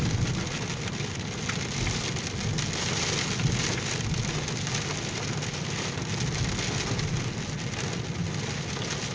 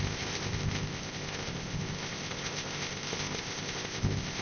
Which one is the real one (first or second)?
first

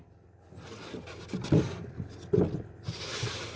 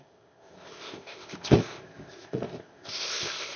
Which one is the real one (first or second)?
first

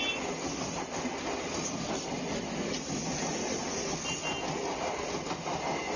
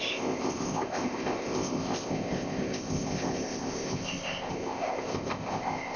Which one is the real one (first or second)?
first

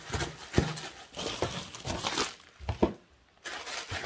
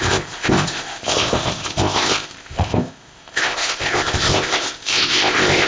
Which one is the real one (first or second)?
first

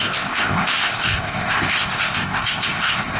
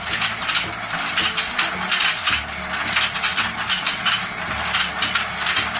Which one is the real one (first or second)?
second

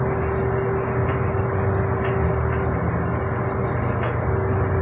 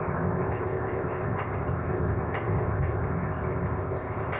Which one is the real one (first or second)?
first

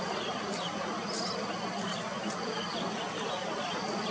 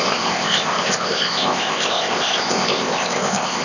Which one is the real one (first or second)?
first